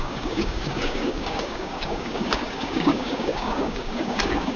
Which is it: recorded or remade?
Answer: remade